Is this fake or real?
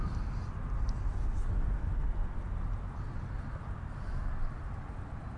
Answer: real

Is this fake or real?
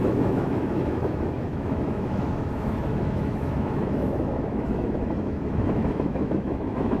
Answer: fake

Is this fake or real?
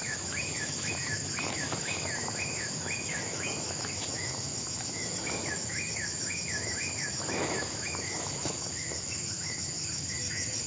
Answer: fake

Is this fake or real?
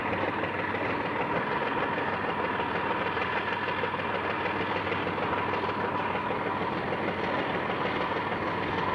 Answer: real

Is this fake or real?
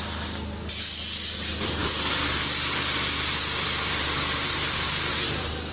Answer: real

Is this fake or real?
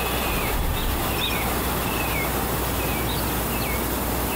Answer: real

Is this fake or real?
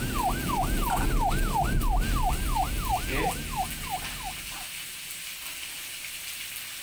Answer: real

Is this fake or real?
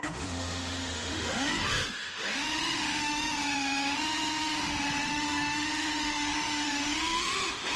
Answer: fake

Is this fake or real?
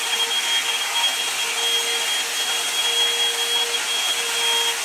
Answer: real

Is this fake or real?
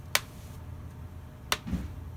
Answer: real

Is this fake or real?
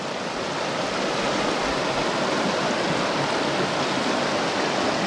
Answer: real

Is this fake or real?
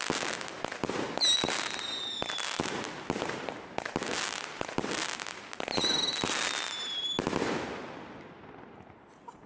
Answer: real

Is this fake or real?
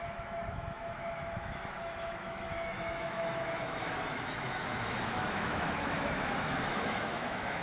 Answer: fake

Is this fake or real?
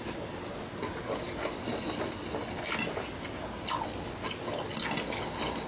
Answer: real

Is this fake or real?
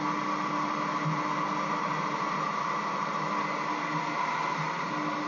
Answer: real